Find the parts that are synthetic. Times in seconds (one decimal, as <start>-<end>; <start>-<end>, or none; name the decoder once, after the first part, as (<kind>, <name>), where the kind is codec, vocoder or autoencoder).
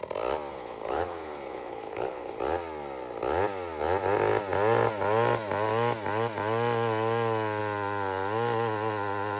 0.5-2.4 (codec, HILCodec)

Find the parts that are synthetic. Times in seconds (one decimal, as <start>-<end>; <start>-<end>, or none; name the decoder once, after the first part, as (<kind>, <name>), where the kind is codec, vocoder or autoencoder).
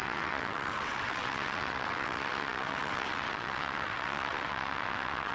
0.0-5.3 (vocoder, WaveNeXt)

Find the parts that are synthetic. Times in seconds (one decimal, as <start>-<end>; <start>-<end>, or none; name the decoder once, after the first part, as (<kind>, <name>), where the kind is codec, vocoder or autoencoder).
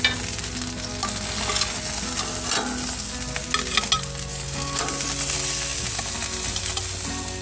4.3-4.8 (codec, DAC)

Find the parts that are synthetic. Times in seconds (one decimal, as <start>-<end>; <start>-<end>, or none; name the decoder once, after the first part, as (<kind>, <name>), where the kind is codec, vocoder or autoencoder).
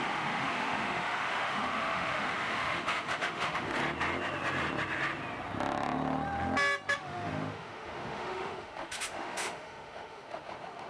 0.0-3.8 (autoencoder, DAC-VAE); 6.9-10.9